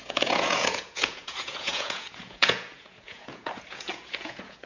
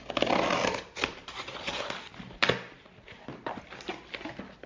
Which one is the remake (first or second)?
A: first